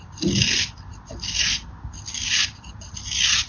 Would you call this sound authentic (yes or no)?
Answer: yes